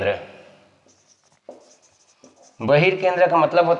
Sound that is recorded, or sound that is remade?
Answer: recorded